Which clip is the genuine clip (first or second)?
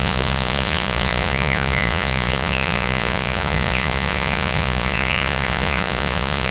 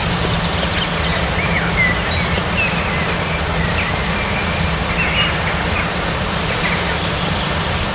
second